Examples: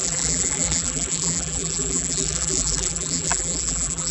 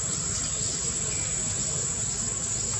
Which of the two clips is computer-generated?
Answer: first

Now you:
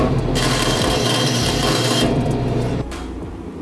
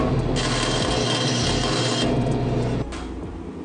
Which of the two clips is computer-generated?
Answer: first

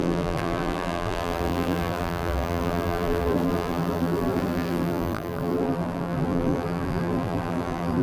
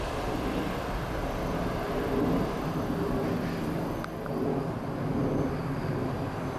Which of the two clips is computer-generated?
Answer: first